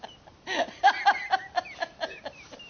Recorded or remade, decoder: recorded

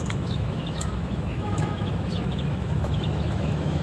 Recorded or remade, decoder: remade, autoencoder, DAC-VAE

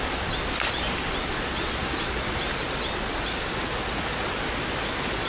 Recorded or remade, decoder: recorded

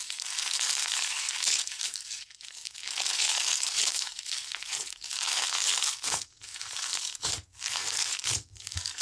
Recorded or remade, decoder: remade, codec, SNAC